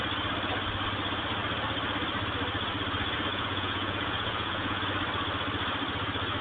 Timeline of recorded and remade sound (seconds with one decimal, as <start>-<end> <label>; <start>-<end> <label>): 0.0-3.3 recorded; 3.3-4.8 remade; 4.8-6.4 recorded